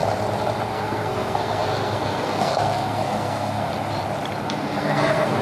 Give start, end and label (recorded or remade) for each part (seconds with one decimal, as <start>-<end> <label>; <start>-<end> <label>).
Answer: 0.0-0.7 recorded; 0.7-3.7 remade; 3.7-4.4 recorded; 4.4-5.4 remade